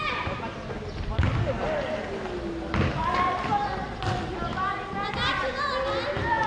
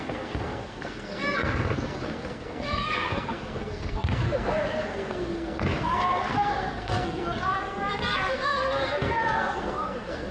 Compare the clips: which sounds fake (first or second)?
second